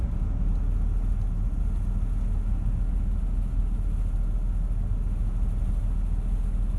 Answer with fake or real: real